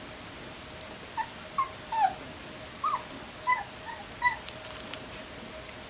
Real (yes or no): yes